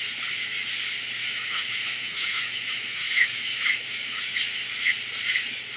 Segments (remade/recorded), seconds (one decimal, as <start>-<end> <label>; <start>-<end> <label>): 0.0-1.2 recorded; 1.2-4.2 remade; 4.2-5.8 recorded